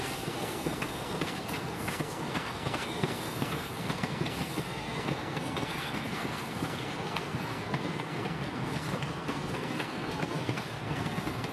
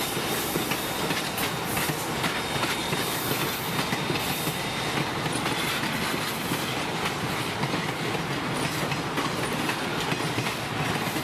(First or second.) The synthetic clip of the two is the first